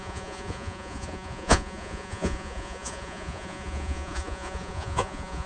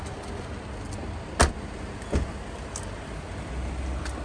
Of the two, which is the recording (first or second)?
second